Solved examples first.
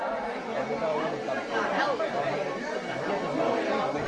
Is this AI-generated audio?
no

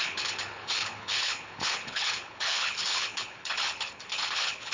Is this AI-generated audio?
yes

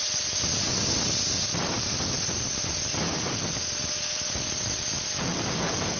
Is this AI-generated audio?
no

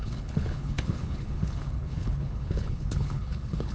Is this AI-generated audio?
yes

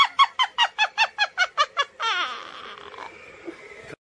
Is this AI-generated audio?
no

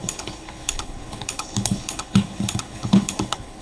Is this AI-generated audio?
yes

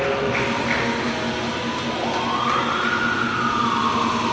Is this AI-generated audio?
no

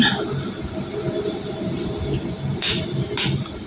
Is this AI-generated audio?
no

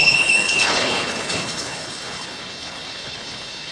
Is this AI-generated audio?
yes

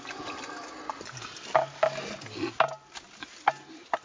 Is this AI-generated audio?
no